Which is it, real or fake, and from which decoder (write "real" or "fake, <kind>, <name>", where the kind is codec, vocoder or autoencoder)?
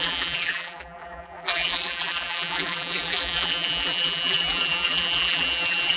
fake, vocoder, BigVGAN v2